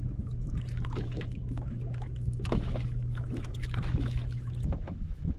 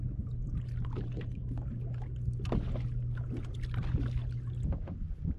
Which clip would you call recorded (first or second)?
second